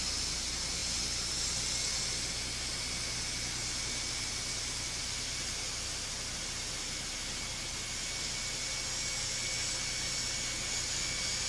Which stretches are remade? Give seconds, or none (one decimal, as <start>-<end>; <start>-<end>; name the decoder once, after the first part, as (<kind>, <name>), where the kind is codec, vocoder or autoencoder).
none